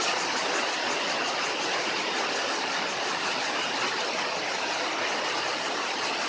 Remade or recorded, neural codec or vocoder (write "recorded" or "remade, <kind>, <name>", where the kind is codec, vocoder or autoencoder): recorded